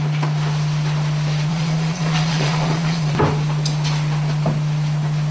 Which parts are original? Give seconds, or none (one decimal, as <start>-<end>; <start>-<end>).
0.0-1.5; 3.1-5.3